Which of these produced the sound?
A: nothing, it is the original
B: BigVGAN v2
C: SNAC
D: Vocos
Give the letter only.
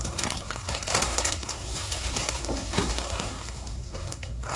C